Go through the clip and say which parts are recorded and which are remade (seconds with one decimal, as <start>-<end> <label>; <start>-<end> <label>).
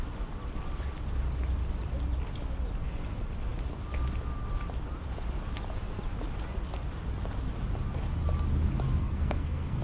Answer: 0.0-9.0 recorded; 9.0-9.8 remade